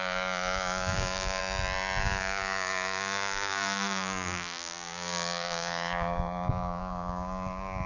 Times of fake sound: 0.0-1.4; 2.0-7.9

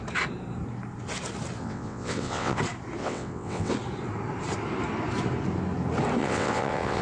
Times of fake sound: 1.6-2.6; 3.0-3.7; 6.2-7.0

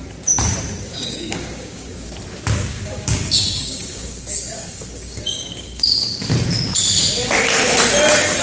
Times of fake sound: 0.9-2.1; 2.7-6.3

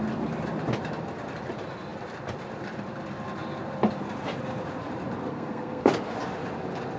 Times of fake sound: 5.3-5.9

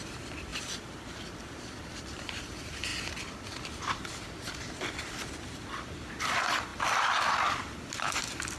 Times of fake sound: 0.0-2.9; 3.6-8.6

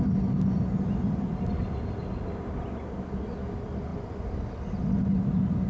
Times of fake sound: none